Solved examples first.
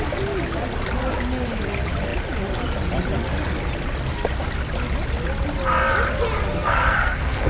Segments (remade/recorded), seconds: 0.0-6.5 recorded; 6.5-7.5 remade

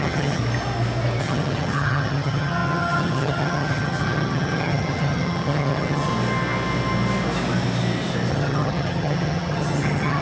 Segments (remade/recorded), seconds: 0.0-0.4 remade; 0.4-1.2 recorded; 1.2-6.1 remade; 6.1-8.3 recorded; 8.3-10.2 remade

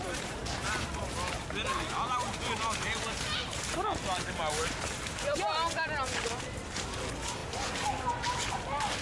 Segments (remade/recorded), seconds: 0.0-9.0 recorded